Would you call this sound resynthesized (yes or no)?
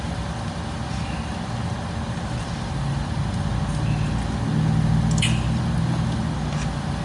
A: no